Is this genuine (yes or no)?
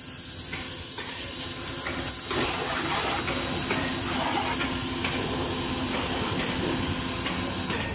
yes